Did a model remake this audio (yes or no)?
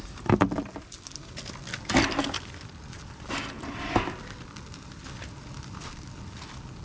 no